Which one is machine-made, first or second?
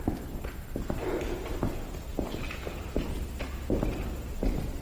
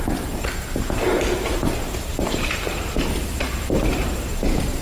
second